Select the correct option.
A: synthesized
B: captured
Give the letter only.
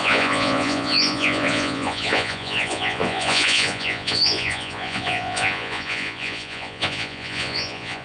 A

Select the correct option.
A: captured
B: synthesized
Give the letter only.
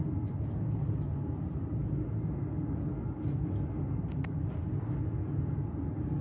A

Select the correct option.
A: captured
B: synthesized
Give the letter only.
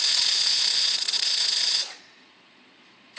B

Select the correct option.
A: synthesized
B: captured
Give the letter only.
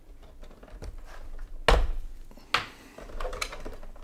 B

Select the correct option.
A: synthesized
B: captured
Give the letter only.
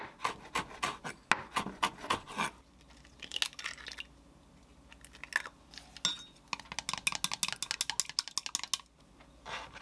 B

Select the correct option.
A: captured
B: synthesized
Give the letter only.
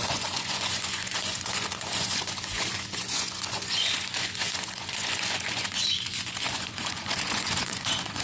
B